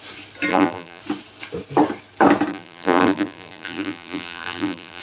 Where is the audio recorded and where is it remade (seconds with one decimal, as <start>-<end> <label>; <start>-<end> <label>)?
0.0-0.5 recorded; 0.5-1.0 remade; 1.0-2.5 recorded; 2.5-5.0 remade

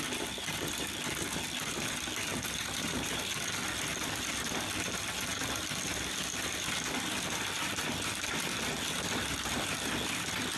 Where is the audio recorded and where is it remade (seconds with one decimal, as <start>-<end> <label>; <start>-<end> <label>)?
0.0-2.3 recorded; 2.3-3.2 remade; 3.2-10.6 recorded

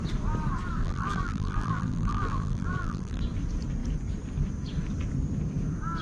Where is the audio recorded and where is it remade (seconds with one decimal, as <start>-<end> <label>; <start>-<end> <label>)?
0.0-0.8 recorded; 0.8-3.2 remade; 3.2-6.0 recorded

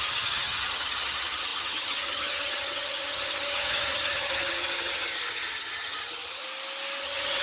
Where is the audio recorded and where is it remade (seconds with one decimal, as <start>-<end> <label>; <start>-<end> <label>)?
0.0-6.4 remade; 6.4-7.0 recorded; 7.0-7.4 remade